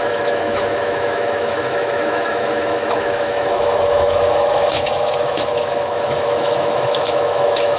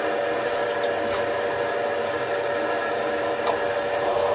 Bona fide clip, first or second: second